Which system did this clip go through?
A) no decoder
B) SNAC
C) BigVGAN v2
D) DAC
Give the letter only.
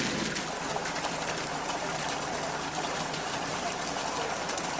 A